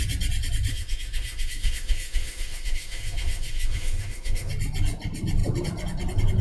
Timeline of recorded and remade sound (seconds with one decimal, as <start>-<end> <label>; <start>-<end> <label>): 0.0-0.7 recorded; 0.7-4.5 remade; 4.5-6.4 recorded